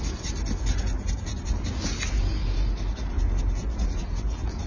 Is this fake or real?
real